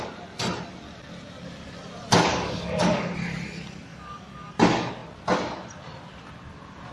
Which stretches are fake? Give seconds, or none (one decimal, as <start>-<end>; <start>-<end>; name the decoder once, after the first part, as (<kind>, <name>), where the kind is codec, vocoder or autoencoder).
2.3-3.1 (codec, DAC); 3.9-4.5